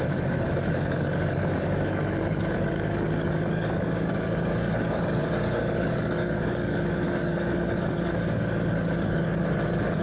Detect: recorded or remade remade